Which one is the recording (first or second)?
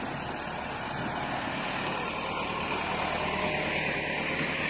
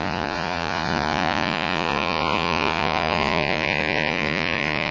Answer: first